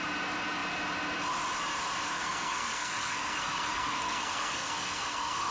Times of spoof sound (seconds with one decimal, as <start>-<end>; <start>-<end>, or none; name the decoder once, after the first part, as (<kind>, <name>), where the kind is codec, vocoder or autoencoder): 2.1-5.5 (codec, SNAC)